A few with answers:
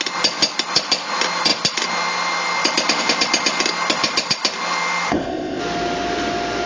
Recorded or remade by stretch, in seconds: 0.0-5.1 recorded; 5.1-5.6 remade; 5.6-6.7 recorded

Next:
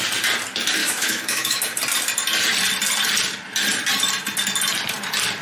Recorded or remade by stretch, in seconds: 0.0-0.8 recorded; 0.8-1.6 remade; 1.6-5.4 recorded

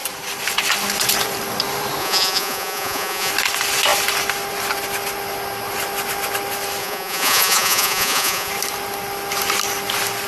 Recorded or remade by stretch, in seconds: 0.0-2.0 recorded; 2.0-3.3 remade; 3.3-6.8 recorded; 6.8-8.5 remade; 8.5-10.3 recorded

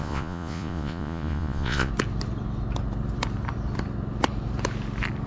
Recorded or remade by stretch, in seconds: 0.0-1.9 remade; 1.9-5.3 recorded

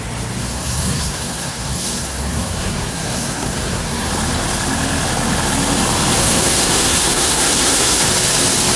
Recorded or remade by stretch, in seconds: 0.0-0.4 recorded; 0.4-4.1 remade; 4.1-6.2 recorded; 6.2-8.1 remade; 8.1-8.8 recorded

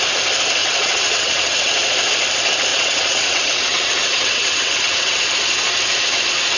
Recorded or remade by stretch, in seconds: 0.0-0.6 recorded; 0.6-1.8 remade; 1.8-2.7 recorded; 2.7-5.2 remade; 5.2-6.6 recorded